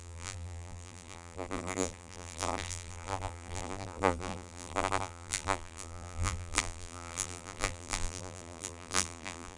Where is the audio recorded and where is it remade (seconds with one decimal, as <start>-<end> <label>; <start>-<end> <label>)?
0.0-9.6 remade